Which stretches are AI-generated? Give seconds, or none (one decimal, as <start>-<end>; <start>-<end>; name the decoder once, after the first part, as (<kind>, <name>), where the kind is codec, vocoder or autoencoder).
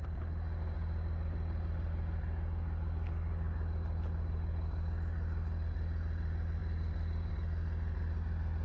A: none